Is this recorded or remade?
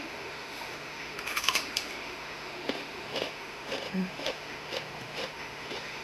remade